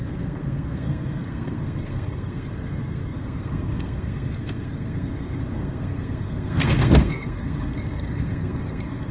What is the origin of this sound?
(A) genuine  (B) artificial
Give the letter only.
B